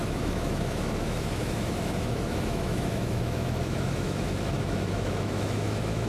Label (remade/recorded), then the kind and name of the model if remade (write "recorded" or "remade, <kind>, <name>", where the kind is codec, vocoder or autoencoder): remade, autoencoder, DAC-VAE